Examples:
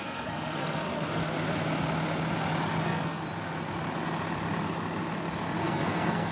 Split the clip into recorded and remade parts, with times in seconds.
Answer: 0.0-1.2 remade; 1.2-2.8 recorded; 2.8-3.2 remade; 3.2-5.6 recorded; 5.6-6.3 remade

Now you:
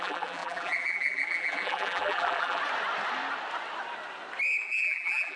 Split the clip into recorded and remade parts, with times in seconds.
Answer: 0.0-2.6 remade; 2.6-4.7 recorded; 4.7-5.4 remade

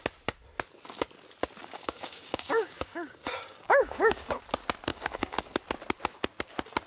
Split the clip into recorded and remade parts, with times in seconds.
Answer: 0.0-1.6 recorded; 1.6-4.4 remade; 4.4-4.9 recorded; 4.9-5.5 remade; 5.5-6.9 recorded

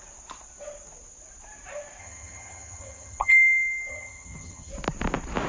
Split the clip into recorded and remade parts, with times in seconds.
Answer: 0.0-2.0 recorded; 2.0-3.3 remade; 3.3-3.9 recorded; 3.9-4.7 remade; 4.7-5.5 recorded

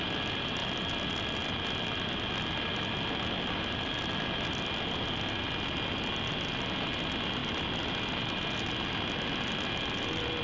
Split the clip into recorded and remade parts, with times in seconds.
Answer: 0.0-10.4 recorded

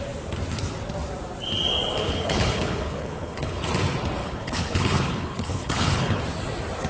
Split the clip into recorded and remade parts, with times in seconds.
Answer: 0.0-2.0 recorded; 2.0-3.6 remade; 3.6-4.2 recorded; 4.2-6.2 remade; 6.2-6.9 recorded

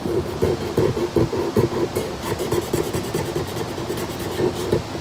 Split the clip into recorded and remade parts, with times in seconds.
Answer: 0.0-5.0 recorded